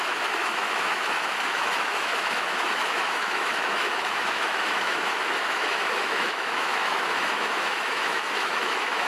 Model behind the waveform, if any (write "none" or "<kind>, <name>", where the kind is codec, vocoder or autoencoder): autoencoder, DAC-VAE